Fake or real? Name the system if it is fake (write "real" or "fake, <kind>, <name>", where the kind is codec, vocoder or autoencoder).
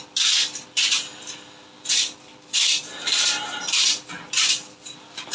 real